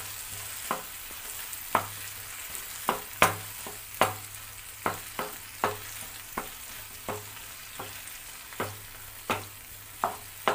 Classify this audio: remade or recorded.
recorded